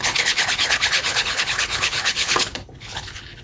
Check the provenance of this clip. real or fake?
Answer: fake